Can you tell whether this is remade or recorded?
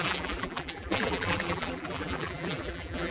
remade